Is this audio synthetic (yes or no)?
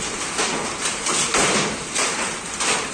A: no